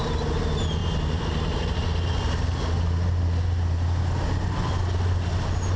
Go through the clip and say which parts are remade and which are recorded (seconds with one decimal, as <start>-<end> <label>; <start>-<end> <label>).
0.0-5.8 recorded